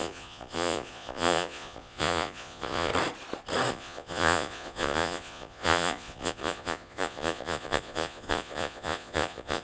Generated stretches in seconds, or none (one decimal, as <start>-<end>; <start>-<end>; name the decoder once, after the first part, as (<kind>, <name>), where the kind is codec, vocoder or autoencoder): 0.0-2.9 (vocoder, Vocos); 3.7-9.6